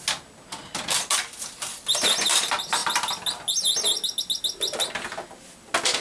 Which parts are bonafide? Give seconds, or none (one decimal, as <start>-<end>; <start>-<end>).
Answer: 0.0-6.0